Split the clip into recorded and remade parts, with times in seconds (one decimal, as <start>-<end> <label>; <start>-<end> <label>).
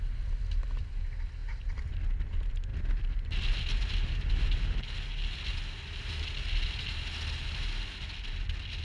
0.0-1.4 recorded; 1.4-1.9 remade; 1.9-8.8 recorded